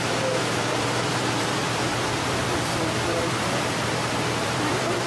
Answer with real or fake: fake